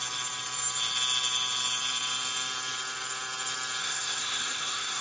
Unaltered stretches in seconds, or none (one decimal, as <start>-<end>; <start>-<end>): 0.0-3.8